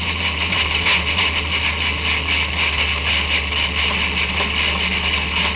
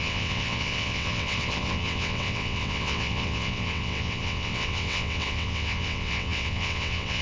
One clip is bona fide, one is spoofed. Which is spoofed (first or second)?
second